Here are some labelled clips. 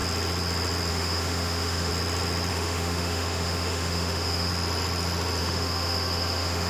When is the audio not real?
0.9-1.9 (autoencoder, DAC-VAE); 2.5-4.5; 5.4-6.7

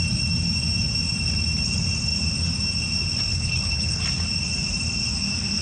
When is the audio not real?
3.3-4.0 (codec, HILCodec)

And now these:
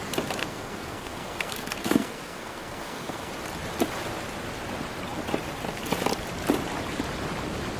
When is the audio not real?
0.4-3.3 (codec, SNAC)

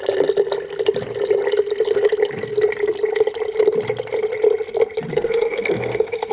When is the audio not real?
5.1-6.3 (codec, SNAC)